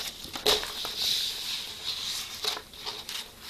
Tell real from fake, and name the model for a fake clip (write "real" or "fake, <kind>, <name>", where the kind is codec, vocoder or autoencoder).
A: real